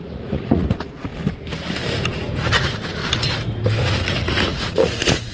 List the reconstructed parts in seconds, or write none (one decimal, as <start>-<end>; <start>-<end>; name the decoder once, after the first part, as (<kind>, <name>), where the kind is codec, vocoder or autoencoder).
0.0-1.1 (vocoder, Vocos); 2.5-3.0; 3.8-5.3